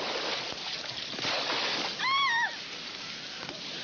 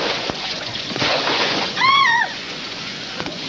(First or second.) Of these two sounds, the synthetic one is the second